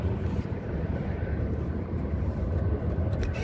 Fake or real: fake